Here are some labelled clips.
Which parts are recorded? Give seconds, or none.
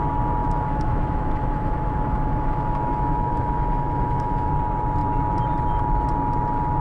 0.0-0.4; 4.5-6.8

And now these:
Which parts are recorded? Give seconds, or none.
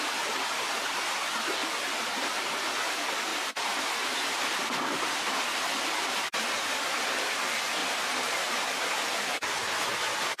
0.0-3.3; 4.8-6.0; 6.8-7.8; 8.6-10.4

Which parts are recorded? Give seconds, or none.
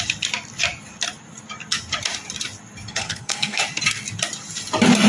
0.0-2.9; 3.6-5.1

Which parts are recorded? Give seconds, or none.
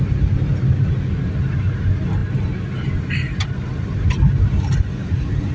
0.0-5.5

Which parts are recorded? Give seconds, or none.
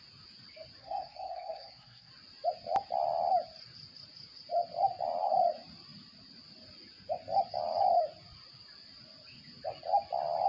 0.0-0.8; 2.1-10.5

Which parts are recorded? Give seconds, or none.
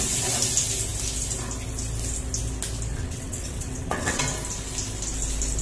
0.0-2.9; 4.2-5.6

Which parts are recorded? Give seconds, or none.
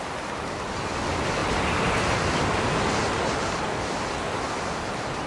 none